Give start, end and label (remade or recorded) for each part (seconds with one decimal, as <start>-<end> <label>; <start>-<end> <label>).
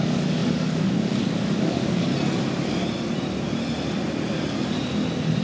0.0-2.1 remade; 2.1-5.4 recorded